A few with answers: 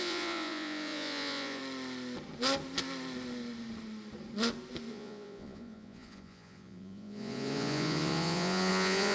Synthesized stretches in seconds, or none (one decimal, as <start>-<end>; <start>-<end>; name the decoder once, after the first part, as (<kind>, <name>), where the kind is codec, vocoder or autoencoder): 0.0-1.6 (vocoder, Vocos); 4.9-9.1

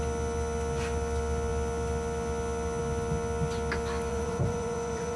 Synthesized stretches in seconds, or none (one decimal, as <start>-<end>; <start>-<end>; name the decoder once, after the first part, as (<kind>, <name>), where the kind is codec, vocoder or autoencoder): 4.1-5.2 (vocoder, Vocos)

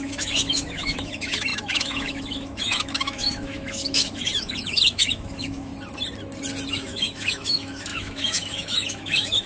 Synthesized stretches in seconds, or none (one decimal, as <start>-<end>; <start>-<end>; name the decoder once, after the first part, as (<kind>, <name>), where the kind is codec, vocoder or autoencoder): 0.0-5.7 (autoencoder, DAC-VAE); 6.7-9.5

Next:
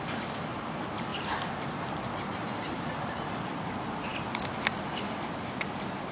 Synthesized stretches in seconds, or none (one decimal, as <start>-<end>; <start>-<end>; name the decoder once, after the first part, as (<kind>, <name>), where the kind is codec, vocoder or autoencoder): 1.1-3.4 (vocoder, BigVGAN v2)